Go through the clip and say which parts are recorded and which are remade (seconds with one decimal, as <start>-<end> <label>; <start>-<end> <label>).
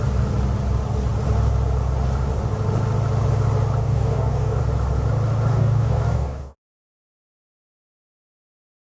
0.0-3.8 recorded; 3.8-4.6 remade; 4.6-5.5 recorded; 5.5-6.8 remade; 6.8-8.9 recorded